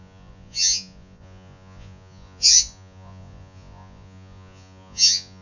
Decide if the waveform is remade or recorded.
remade